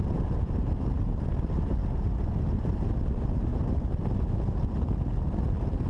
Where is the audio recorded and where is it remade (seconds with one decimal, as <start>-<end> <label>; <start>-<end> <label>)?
0.0-5.9 recorded